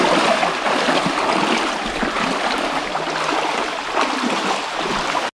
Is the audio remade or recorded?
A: recorded